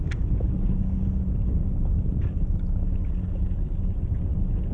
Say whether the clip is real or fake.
real